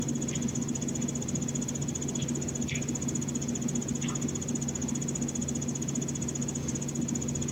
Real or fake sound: real